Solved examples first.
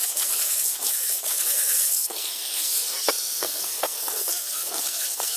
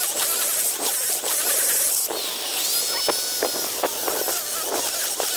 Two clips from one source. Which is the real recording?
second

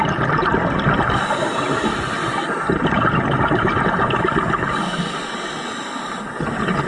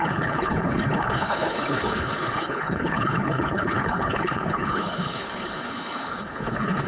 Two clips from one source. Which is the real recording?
first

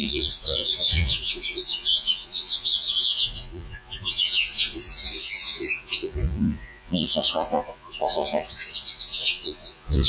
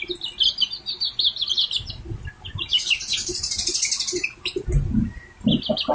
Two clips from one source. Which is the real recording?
second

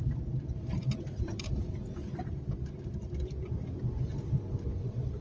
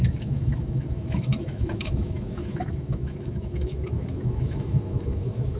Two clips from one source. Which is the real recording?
first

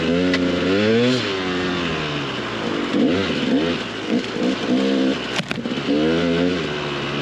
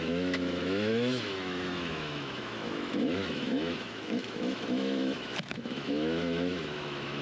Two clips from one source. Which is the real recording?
first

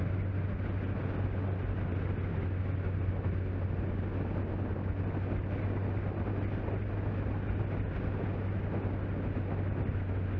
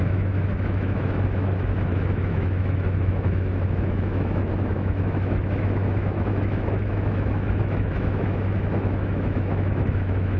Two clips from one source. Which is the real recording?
first